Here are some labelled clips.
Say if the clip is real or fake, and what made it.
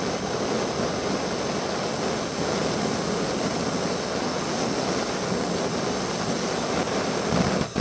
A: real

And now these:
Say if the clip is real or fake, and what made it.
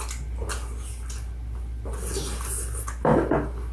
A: real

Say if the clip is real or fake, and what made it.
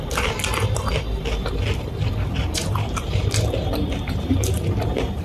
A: fake, vocoder, BigVGAN v2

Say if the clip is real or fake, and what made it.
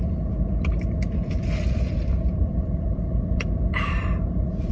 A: fake, vocoder, BigVGAN v2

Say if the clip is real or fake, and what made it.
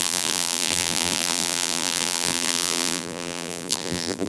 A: fake, vocoder, BigVGAN v2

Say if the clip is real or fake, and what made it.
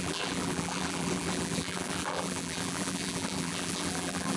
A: fake, vocoder, BigVGAN v2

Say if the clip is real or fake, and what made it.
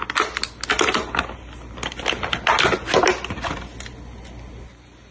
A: real